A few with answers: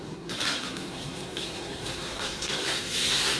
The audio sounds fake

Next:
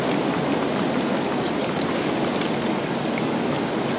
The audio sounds real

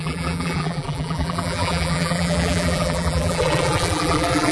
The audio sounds fake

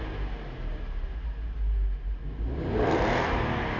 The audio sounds real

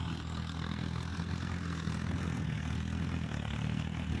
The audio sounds fake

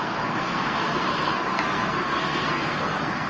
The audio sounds fake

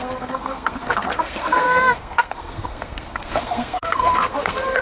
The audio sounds fake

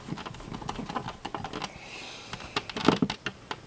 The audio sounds real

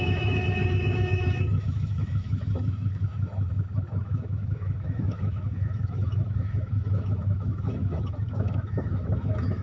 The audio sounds fake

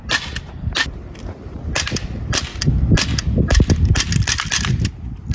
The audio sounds real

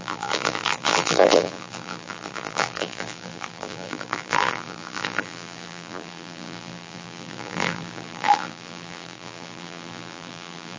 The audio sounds fake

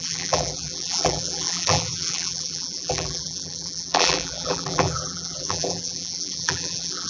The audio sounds fake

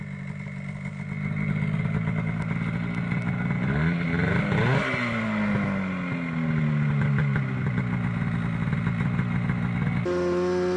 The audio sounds real